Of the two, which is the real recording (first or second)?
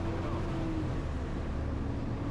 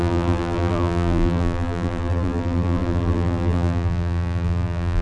first